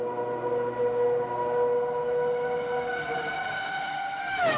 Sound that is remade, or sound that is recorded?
recorded